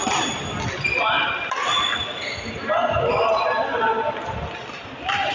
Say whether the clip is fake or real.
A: real